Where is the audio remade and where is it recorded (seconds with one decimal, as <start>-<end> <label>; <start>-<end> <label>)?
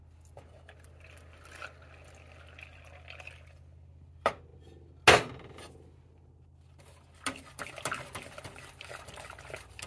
0.0-9.9 recorded